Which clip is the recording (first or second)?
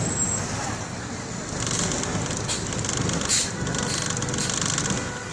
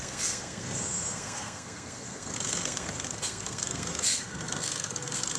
first